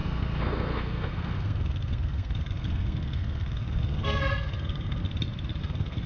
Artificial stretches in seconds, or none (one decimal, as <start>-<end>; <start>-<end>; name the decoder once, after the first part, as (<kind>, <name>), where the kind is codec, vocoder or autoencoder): 0.0-5.0 (codec, SNAC); 5.6-6.1